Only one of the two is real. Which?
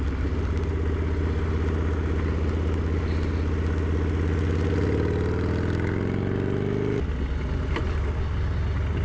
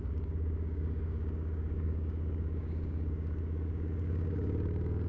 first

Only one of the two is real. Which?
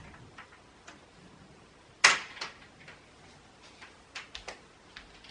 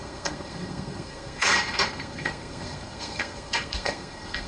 first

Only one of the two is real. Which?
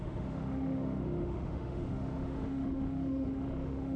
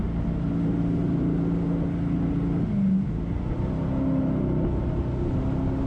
second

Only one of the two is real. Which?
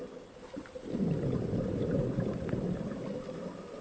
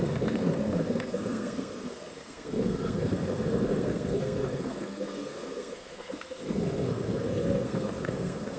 first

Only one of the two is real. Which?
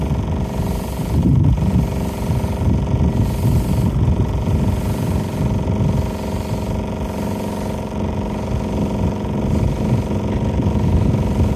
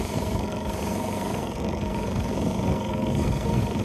first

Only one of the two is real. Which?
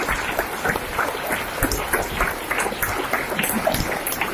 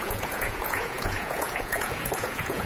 first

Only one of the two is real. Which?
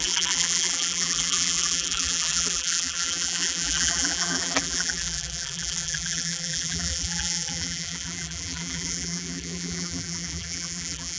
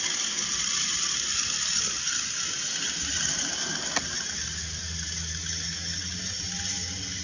second